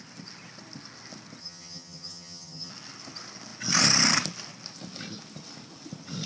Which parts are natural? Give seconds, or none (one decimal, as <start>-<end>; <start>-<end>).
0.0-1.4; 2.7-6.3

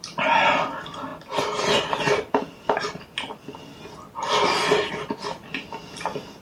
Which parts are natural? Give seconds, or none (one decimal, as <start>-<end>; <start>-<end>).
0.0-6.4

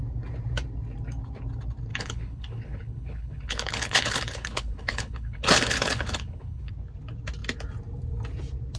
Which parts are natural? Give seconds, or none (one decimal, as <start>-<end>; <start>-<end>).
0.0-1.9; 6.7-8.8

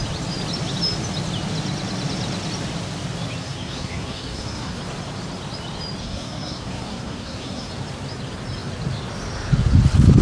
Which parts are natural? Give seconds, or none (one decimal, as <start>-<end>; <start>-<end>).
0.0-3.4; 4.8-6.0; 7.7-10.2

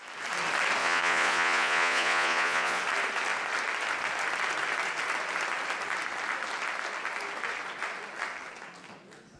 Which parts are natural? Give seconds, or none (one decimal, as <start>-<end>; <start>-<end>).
0.0-0.8; 2.8-9.4

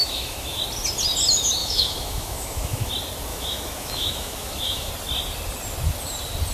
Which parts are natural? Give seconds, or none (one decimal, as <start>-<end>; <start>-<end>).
0.6-1.6; 2.9-3.3; 4.9-6.5

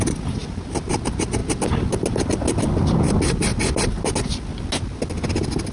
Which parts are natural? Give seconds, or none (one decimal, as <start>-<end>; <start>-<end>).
0.0-5.7